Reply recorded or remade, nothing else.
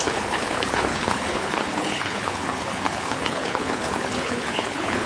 remade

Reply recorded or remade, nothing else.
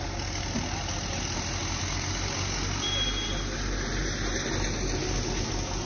recorded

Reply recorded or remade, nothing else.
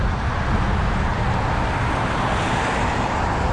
recorded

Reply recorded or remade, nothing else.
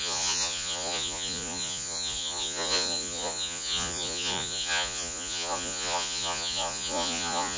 remade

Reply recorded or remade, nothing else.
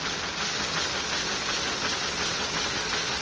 recorded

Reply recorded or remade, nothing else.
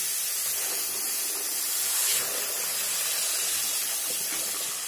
recorded